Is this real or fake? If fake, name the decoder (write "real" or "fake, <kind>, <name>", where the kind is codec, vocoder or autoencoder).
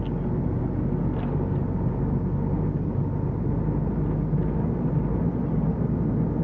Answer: real